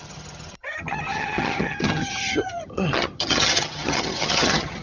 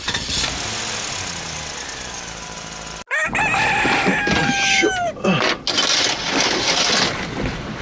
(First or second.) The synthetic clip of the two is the first